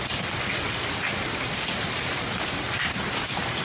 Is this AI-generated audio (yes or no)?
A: yes